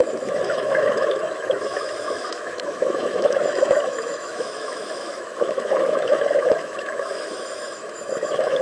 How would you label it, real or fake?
fake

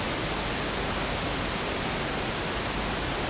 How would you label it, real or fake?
real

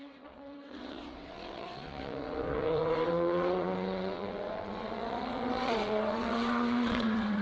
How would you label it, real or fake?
fake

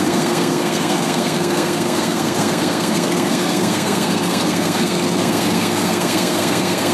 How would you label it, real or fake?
fake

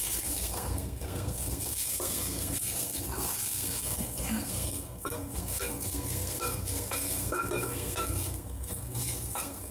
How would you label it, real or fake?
fake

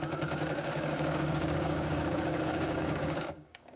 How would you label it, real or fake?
fake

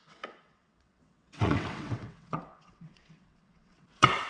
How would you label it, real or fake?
fake